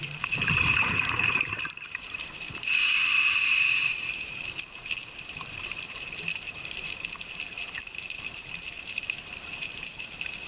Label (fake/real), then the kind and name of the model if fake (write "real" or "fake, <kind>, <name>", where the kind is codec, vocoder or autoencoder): fake, vocoder, BigVGAN v2